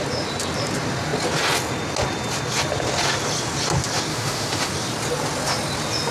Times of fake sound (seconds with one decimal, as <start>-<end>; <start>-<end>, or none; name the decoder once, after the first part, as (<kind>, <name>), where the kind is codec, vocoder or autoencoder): 4.1-4.7 (autoencoder, DAC-VAE)